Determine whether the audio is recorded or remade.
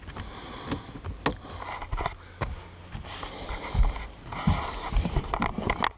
recorded